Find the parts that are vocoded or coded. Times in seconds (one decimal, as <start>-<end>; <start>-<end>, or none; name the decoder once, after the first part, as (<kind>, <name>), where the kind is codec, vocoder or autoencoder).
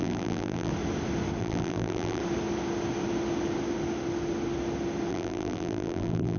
0.0-0.7 (vocoder, BigVGAN v2); 1.4-2.2; 5.1-6.4